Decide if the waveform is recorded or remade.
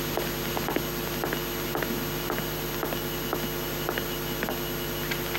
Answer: recorded